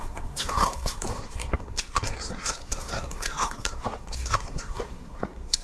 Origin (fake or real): fake